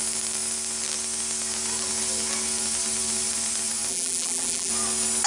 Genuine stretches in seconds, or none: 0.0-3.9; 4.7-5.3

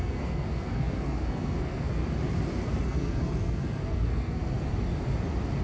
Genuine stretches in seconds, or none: 2.0-2.8; 4.7-5.6

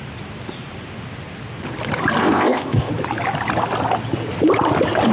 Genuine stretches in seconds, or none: 0.0-2.2; 2.9-5.1

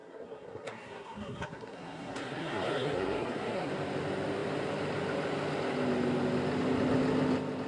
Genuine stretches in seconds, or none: 3.7-7.7